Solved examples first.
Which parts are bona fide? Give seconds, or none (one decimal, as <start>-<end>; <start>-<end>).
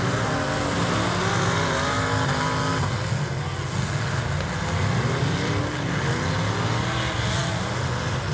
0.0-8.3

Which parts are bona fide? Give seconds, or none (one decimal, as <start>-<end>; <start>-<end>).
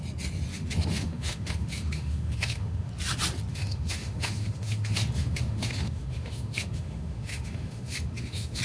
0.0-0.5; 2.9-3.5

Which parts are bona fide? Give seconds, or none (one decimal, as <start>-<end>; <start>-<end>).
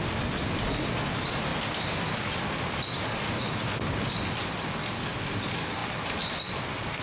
0.0-7.0